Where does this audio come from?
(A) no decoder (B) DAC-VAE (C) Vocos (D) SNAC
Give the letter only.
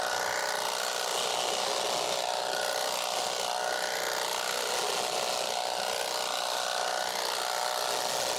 A